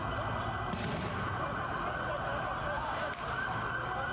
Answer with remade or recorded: recorded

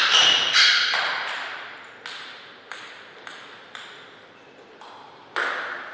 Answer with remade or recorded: recorded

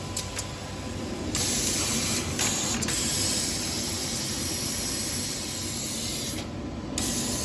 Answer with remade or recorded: recorded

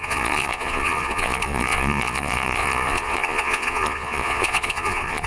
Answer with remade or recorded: remade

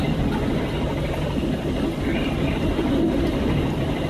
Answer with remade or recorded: recorded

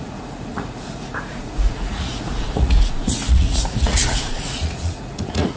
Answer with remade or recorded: remade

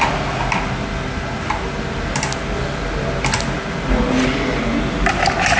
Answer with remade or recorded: recorded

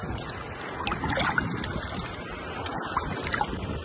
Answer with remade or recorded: recorded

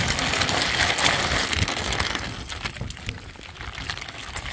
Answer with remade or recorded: recorded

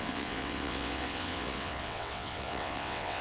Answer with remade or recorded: remade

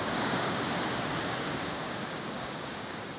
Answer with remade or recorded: remade